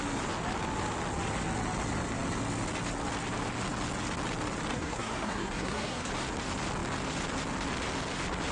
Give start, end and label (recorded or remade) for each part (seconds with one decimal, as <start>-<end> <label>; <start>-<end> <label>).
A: 0.0-4.7 recorded; 4.7-6.1 remade; 6.1-8.5 recorded